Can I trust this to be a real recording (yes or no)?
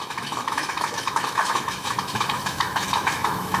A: no